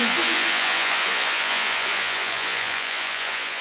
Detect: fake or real fake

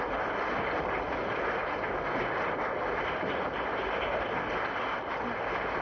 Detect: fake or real real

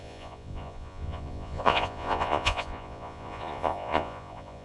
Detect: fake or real fake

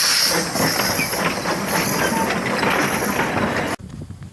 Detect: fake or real real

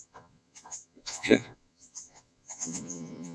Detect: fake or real fake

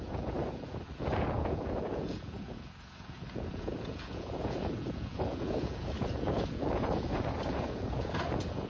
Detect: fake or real fake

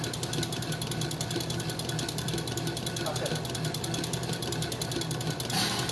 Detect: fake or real real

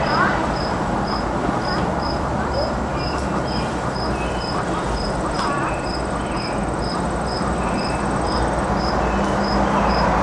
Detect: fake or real real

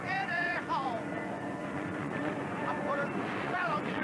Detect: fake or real fake